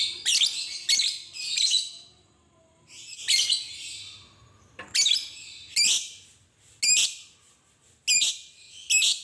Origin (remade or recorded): recorded